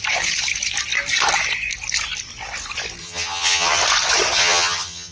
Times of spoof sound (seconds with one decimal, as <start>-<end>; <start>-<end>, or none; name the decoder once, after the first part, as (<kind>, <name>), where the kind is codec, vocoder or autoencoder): 3.0-3.8 (vocoder, HiFi-GAN); 4.4-5.1